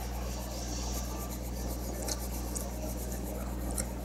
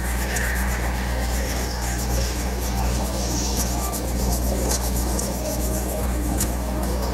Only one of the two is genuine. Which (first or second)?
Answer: first